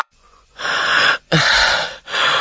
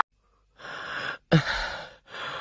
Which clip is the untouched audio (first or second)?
second